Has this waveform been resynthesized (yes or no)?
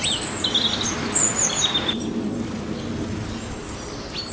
no